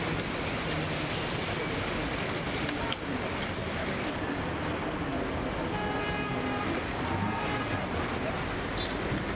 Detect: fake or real real